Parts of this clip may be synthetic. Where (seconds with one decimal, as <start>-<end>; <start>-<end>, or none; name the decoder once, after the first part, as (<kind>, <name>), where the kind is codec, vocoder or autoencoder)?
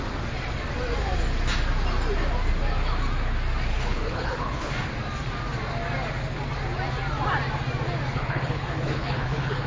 3.7-4.7 (codec, HILCodec); 8.1-9.7